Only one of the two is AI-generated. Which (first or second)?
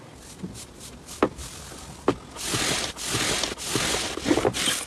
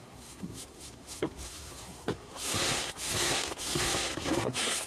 second